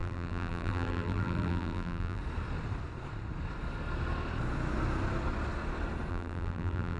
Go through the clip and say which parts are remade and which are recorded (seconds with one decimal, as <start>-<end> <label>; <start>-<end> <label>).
0.0-2.2 remade; 2.2-6.1 recorded; 6.1-7.0 remade